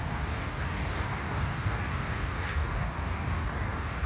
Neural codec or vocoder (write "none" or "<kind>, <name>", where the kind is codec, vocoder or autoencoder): codec, DAC